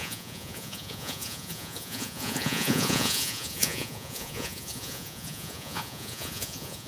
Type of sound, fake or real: fake